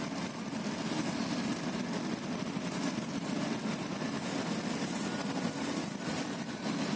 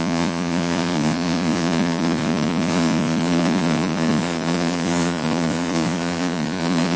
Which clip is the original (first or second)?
first